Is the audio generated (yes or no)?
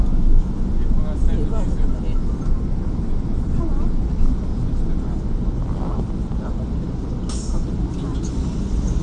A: no